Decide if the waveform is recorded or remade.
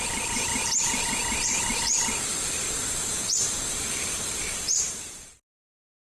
remade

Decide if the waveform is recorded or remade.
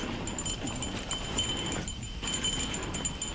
recorded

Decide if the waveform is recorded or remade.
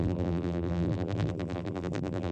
remade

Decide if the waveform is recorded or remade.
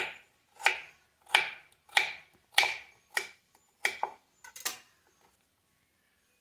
recorded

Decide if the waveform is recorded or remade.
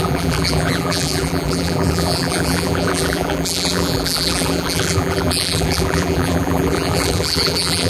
remade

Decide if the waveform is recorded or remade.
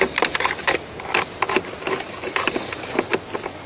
recorded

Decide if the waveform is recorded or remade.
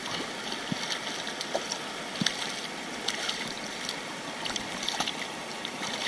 recorded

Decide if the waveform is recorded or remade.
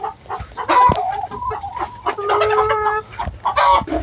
recorded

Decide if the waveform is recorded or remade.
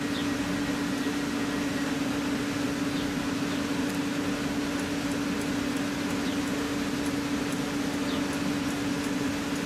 recorded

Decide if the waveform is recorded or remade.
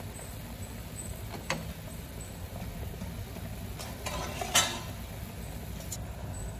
recorded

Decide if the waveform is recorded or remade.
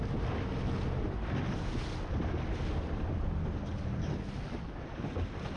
recorded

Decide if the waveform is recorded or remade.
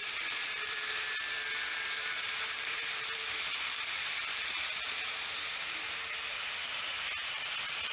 remade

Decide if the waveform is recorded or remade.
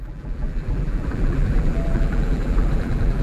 remade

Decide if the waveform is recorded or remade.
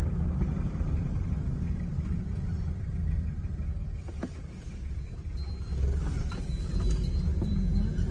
recorded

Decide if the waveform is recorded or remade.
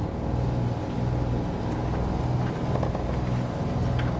recorded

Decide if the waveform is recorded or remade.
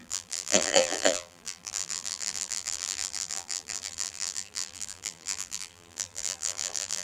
remade